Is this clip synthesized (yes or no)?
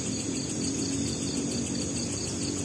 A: no